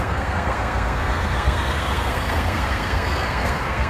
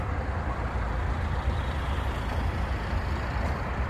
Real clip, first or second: second